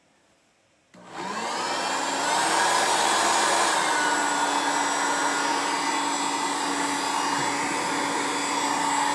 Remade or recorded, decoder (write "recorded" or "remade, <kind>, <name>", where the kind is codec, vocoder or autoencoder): recorded